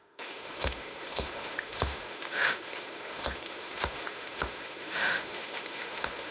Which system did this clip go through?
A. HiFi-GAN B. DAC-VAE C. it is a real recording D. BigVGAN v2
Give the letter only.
B